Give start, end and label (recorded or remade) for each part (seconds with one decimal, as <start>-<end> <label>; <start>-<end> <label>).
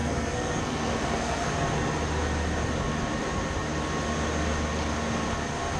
0.0-1.5 remade; 1.5-5.8 recorded